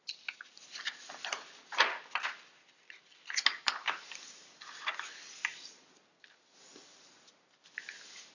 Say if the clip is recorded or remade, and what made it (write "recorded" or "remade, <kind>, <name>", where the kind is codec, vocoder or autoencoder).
recorded